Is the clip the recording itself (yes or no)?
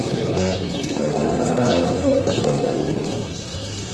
no